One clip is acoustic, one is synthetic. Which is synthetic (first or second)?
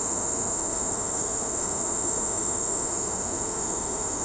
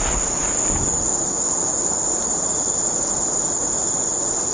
first